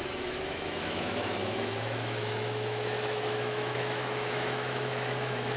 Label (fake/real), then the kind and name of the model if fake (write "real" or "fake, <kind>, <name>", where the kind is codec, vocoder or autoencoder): fake, autoencoder, DAC-VAE